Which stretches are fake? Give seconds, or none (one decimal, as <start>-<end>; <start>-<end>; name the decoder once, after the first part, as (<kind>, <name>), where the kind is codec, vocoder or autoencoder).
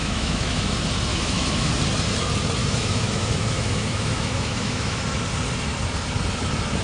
0.0-0.7 (autoencoder, DAC-VAE); 1.1-1.7; 2.6-5.0